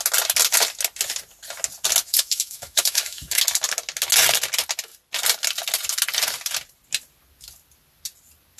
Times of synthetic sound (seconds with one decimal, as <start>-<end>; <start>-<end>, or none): 2.1-3.4